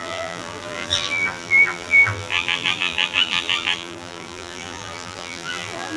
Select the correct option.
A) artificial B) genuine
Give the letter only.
A